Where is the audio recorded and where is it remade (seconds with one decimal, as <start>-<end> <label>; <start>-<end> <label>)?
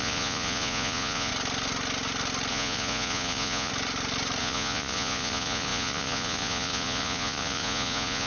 0.0-1.3 remade; 1.3-2.5 recorded; 2.5-3.7 remade; 3.7-4.4 recorded; 4.4-8.3 remade